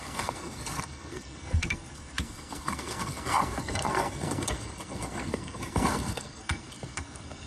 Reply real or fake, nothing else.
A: fake